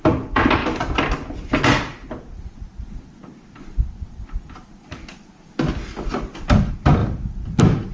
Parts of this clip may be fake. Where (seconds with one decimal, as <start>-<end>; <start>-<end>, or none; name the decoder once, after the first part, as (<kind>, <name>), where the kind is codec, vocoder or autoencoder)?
none